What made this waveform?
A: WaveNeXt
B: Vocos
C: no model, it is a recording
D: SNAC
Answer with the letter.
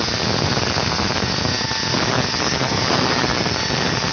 C